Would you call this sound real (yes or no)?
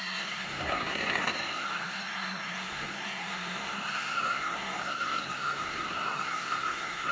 no